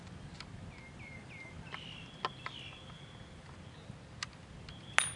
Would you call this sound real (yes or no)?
yes